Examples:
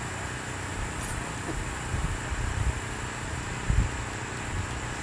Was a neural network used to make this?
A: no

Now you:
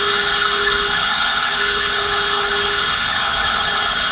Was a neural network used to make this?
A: yes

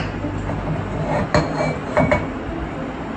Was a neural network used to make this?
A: no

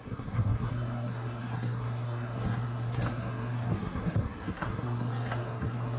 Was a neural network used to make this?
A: yes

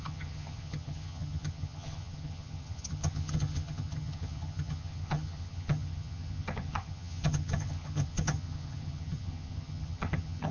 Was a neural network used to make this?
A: yes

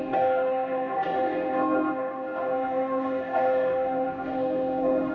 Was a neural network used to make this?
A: yes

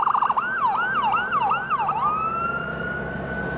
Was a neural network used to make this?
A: no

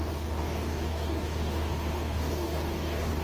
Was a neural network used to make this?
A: yes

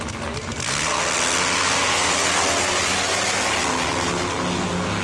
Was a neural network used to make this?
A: no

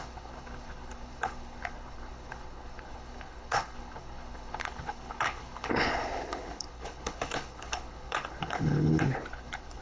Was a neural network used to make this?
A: yes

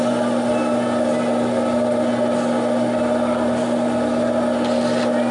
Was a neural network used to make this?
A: no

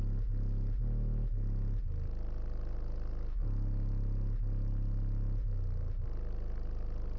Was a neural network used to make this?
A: no